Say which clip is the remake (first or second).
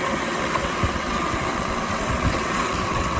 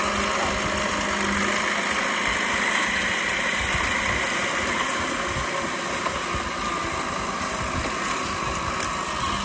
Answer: first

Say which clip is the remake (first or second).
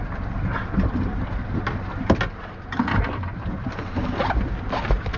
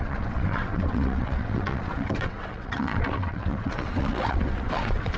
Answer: second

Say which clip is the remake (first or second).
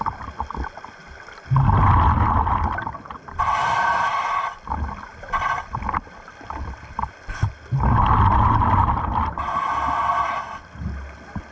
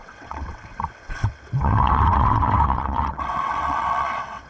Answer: second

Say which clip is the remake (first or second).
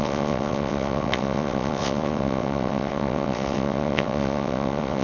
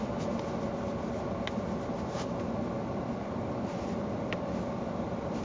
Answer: first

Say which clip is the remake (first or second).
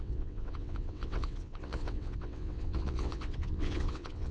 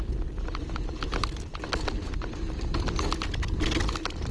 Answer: first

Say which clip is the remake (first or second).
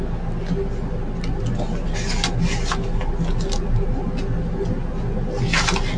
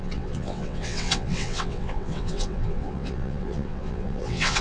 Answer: second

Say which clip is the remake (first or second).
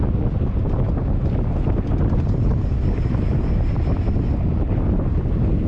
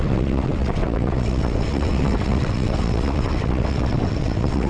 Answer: second